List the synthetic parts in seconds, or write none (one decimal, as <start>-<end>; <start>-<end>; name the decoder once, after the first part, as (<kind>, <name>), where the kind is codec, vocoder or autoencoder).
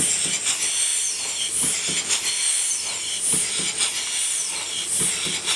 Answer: none